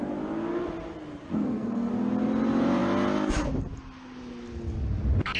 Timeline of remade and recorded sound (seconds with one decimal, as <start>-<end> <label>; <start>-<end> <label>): 0.0-1.3 recorded; 1.3-1.9 remade; 1.9-5.4 recorded